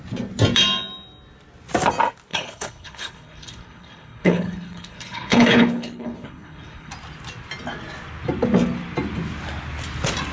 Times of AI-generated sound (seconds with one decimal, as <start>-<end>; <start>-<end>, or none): 2.3-6.9